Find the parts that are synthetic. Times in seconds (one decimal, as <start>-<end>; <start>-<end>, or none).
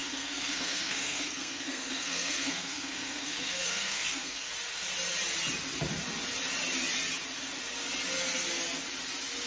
0.0-4.5